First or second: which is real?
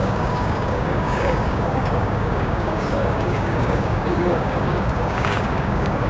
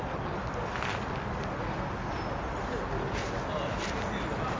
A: second